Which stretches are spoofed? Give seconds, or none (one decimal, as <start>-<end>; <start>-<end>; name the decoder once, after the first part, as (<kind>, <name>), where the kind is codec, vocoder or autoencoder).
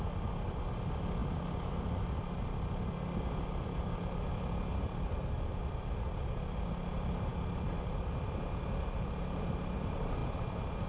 none